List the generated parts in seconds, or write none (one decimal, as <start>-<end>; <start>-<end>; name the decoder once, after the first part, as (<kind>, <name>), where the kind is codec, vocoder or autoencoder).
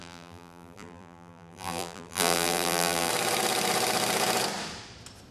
0.0-3.1 (vocoder, BigVGAN v2)